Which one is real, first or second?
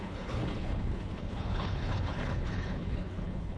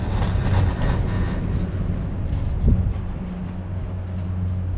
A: second